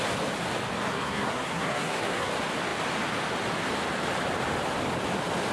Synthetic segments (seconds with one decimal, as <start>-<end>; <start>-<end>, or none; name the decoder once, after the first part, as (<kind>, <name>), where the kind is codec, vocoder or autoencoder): 0.9-2.3 (codec, SNAC)